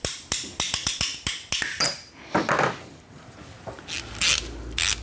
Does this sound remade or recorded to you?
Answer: recorded